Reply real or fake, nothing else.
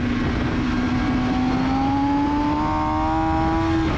real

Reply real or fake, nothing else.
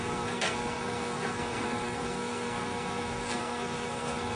fake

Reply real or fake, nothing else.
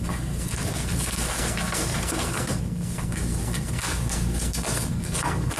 fake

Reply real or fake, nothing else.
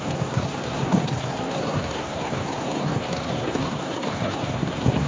fake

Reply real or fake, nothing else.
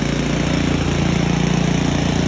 real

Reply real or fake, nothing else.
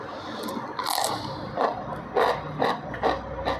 real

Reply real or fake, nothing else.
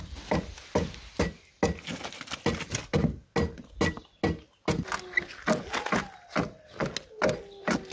real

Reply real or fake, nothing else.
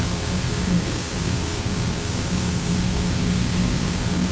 fake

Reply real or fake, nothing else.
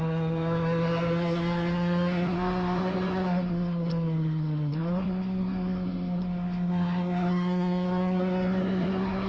fake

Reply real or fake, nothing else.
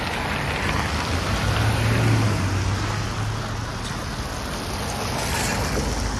real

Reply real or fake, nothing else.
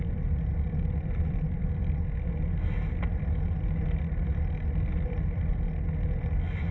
real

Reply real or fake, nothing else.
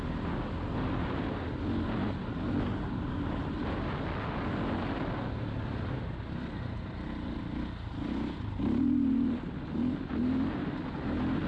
real